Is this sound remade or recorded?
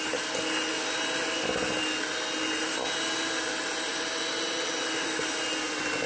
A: recorded